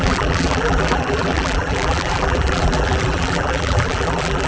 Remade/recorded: remade